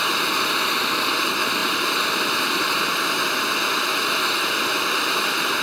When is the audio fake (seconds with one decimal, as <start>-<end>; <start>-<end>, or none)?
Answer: none